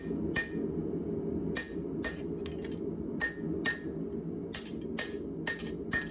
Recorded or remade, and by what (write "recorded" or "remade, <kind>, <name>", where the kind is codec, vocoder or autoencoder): recorded